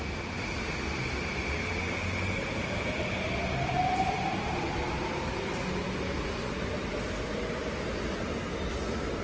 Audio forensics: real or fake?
real